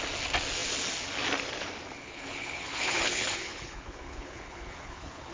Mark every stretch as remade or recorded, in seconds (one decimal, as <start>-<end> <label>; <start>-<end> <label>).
0.0-2.0 recorded; 2.0-5.3 remade